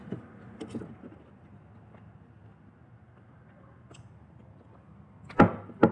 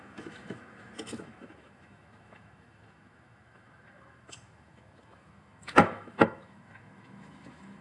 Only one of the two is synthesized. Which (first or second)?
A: second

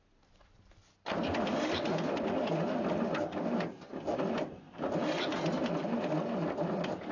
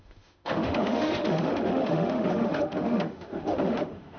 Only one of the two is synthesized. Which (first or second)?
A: second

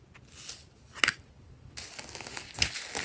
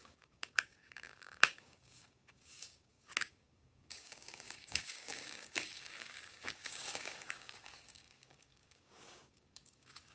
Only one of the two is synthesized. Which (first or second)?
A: second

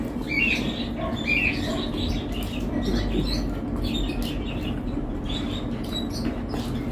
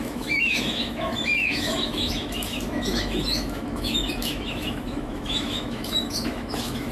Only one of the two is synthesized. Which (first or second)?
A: second